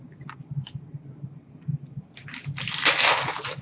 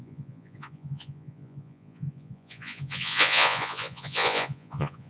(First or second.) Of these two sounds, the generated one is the second